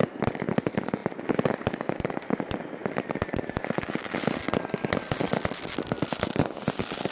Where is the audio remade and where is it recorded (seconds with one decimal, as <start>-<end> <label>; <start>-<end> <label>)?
0.0-7.1 recorded